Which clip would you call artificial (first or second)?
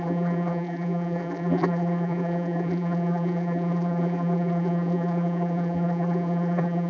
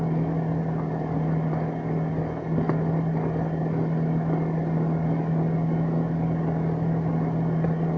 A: first